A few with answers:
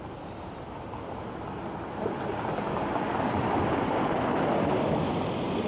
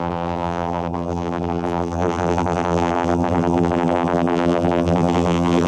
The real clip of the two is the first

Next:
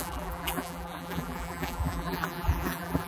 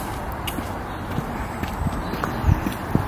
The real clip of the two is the second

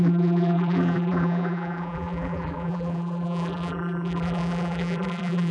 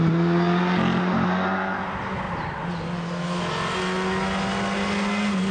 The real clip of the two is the second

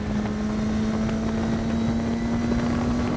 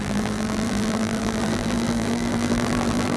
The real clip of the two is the first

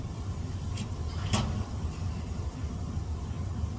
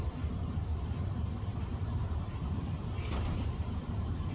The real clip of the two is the first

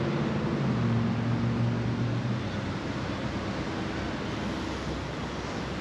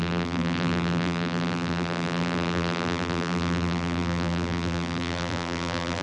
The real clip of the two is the first